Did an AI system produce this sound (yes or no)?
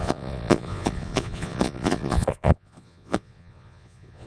yes